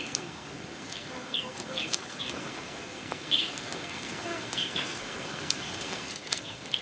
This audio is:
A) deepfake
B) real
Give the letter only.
A